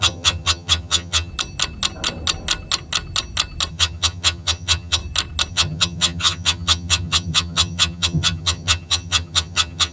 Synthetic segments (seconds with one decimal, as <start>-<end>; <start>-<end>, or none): 0.0-1.3; 3.7-5.0; 5.5-9.9